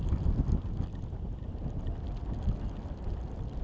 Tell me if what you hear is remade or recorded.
recorded